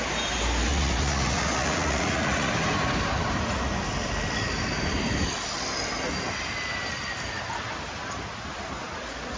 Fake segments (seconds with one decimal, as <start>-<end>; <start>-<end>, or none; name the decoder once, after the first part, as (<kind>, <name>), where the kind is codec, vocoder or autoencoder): 0.7-2.5 (vocoder, Vocos)